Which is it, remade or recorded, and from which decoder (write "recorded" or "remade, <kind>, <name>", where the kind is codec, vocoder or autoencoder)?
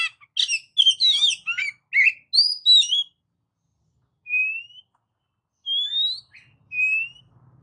recorded